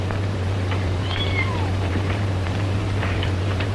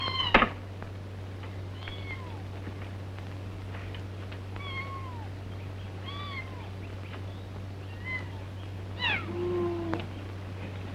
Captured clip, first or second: second